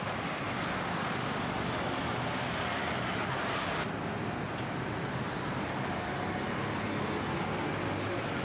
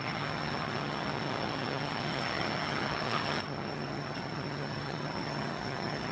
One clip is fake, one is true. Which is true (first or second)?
first